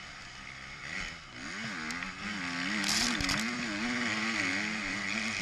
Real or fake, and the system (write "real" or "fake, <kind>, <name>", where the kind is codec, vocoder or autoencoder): real